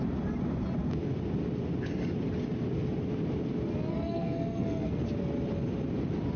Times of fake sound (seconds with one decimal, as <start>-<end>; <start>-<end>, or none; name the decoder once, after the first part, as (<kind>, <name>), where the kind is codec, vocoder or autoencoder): 3.9-5.0 (codec, SNAC)